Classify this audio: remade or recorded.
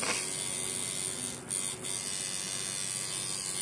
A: recorded